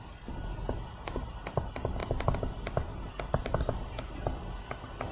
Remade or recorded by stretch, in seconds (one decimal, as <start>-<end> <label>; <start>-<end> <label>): 0.0-5.1 recorded